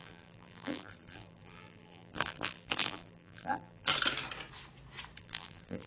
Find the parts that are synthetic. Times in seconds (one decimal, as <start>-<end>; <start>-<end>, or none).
0.0-3.9; 5.2-5.9